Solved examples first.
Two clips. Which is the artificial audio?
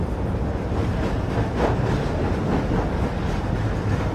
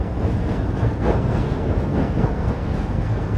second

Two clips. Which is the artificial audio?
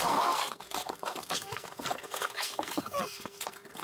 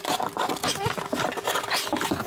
first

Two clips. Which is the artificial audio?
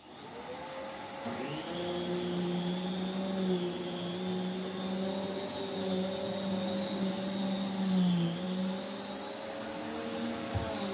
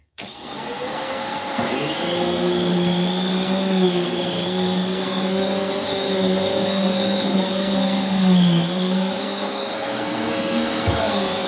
second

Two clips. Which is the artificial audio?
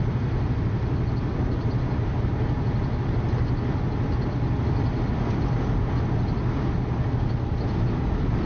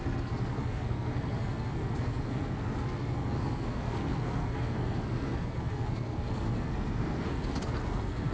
second